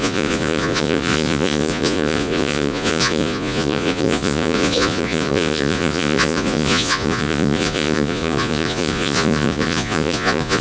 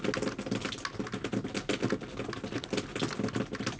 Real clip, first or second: second